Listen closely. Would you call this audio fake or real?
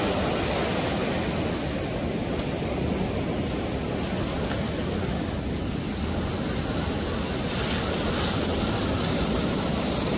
real